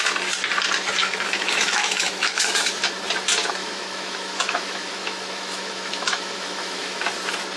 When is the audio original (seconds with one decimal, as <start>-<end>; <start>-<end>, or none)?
0.0-1.0; 2.9-3.6; 7.0-7.6

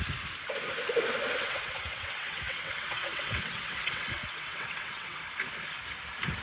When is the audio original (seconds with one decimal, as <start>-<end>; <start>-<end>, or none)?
0.0-1.4; 5.2-6.4

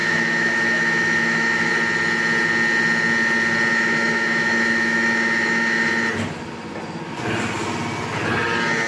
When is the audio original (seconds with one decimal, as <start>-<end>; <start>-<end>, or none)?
1.7-3.7; 5.9-8.9

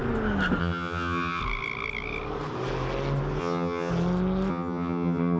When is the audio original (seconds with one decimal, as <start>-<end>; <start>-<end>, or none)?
0.0-0.6; 1.4-3.4; 3.9-4.5

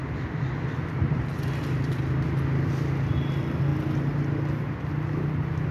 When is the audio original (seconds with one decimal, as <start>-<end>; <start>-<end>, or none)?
0.0-5.7

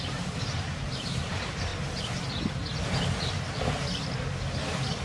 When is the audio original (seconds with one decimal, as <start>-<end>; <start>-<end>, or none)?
1.7-5.0

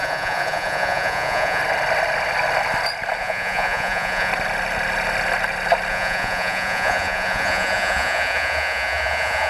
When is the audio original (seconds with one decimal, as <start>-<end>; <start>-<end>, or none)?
1.6-3.2; 4.3-5.9